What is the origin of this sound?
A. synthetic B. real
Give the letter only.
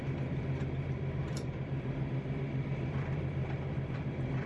A